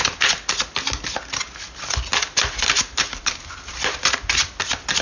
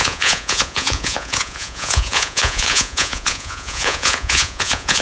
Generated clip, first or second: second